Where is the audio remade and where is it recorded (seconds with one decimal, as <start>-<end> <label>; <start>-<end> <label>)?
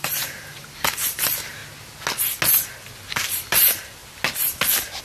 0.0-1.6 remade; 1.6-3.0 recorded; 3.0-4.0 remade; 4.0-5.0 recorded